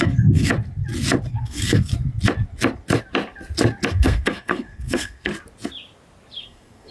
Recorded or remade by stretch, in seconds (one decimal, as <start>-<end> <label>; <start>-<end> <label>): 0.0-0.5 remade; 0.5-1.3 recorded; 1.3-1.9 remade; 1.9-3.9 recorded; 3.9-5.3 remade; 5.3-6.4 recorded; 6.4-6.9 remade

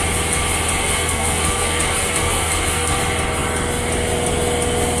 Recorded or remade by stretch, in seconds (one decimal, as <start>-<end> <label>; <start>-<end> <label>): 0.0-0.8 recorded; 0.8-3.0 remade; 3.0-5.0 recorded

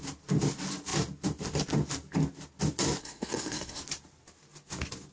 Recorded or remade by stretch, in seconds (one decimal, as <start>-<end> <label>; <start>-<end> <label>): 0.0-3.0 recorded; 3.0-3.8 remade; 3.8-5.1 recorded

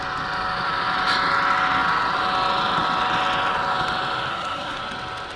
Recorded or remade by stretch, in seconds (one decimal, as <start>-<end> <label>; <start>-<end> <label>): 0.0-4.3 recorded; 4.3-4.8 remade; 4.8-5.4 recorded

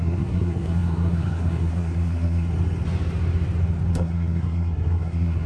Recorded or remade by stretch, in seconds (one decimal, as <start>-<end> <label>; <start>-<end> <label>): 0.0-2.5 remade; 2.5-3.9 recorded; 3.9-5.5 remade

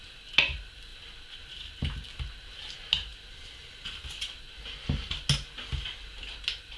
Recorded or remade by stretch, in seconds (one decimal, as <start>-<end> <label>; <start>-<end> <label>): 0.0-6.8 recorded

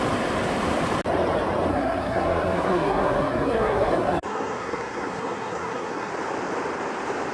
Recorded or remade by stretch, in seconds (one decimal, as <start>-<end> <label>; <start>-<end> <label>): 0.0-1.7 recorded; 1.7-6.1 remade; 6.1-7.3 recorded